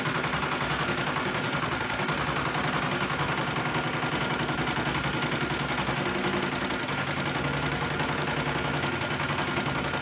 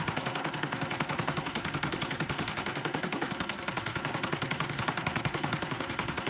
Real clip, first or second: first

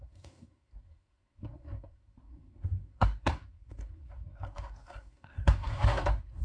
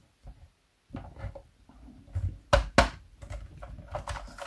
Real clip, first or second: second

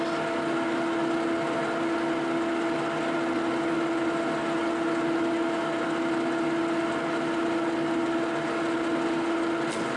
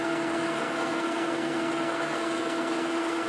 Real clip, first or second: first